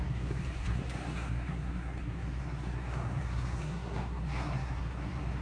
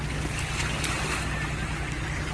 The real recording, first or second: second